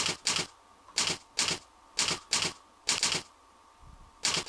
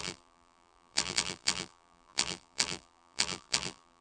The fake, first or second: second